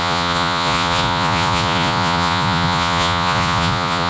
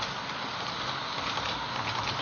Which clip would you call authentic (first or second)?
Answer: second